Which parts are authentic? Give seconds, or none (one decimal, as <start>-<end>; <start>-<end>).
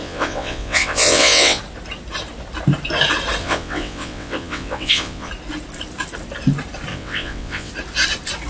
1.6-3.4; 5.3-6.9; 7.7-8.5